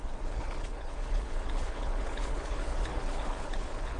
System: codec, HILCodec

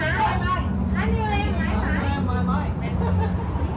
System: none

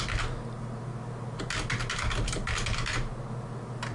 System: none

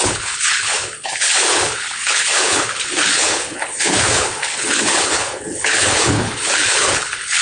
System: codec, HILCodec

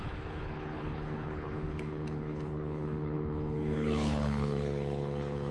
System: codec, HILCodec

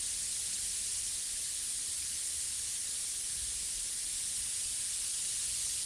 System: none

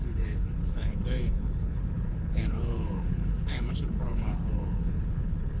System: codec, HILCodec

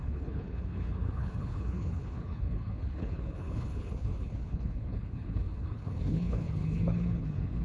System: codec, HILCodec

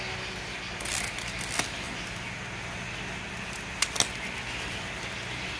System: none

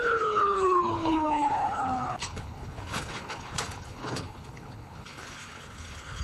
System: codec, HILCodec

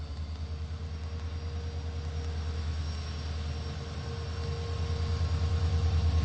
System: none